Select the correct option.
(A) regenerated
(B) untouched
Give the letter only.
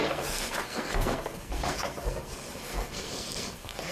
A